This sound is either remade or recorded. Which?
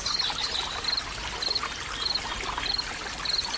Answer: recorded